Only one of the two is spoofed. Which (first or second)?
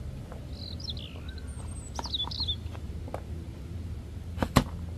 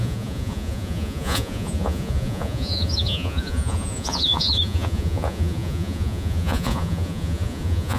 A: second